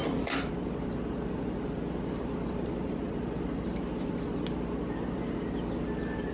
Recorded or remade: recorded